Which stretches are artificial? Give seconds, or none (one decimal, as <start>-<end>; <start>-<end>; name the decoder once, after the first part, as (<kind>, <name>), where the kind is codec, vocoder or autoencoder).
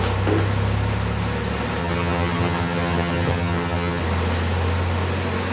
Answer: 1.8-4.0 (vocoder, HiFi-GAN)